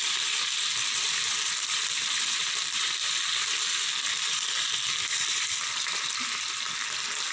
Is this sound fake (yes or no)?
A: yes